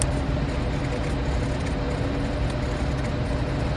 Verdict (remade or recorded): recorded